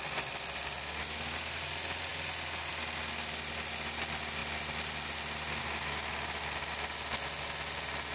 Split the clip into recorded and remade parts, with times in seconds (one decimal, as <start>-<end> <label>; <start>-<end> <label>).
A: 0.0-8.1 recorded